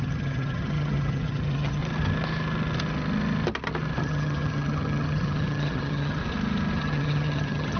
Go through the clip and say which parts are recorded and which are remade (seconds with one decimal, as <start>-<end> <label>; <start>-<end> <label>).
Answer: 0.0-1.8 remade; 1.8-4.0 recorded; 4.0-6.2 remade; 6.2-6.8 recorded; 6.8-7.8 remade